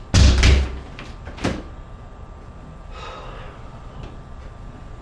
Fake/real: real